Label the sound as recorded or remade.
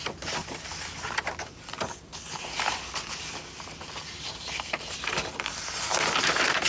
recorded